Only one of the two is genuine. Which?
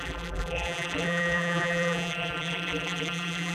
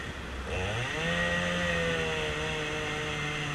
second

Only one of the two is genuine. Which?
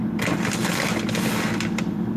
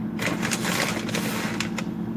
second